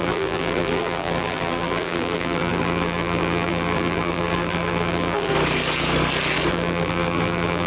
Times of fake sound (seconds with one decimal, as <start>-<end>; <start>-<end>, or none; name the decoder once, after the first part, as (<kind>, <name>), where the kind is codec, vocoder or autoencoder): 0.0-5.3 (vocoder, BigVGAN v2); 6.5-7.7